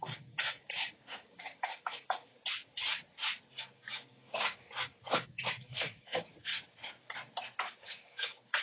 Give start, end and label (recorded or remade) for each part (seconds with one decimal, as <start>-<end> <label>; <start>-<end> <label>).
0.0-2.3 remade; 2.3-3.6 recorded; 3.6-6.5 remade; 6.5-7.6 recorded; 7.6-8.6 remade